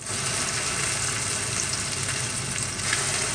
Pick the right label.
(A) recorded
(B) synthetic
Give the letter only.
A